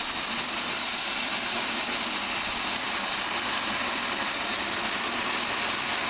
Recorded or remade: recorded